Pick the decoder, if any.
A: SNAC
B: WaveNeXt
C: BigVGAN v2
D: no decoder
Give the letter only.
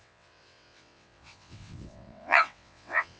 B